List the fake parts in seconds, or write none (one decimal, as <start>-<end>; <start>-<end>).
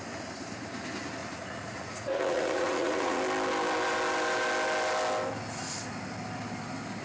1.2-3.2